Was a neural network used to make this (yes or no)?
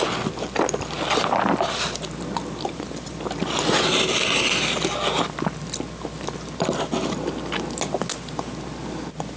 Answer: no